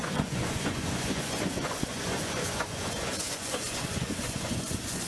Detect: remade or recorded remade